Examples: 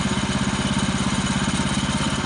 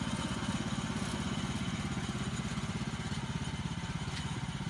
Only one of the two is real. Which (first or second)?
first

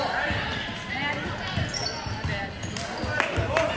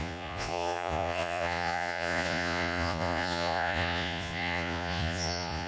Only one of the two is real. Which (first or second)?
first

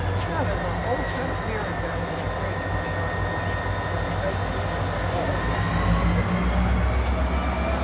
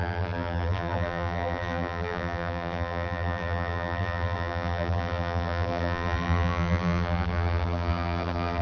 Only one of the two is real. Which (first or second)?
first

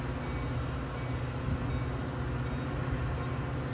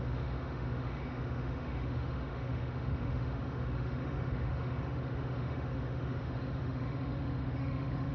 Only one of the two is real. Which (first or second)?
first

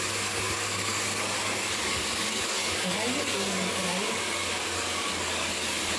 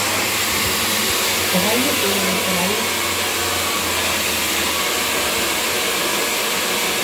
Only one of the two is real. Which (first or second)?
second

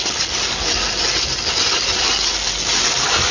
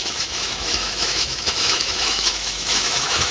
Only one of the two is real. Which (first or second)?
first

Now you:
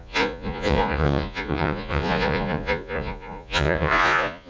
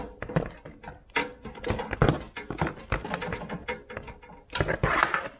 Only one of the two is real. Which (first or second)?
second